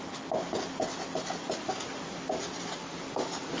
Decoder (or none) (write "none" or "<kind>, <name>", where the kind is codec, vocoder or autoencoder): none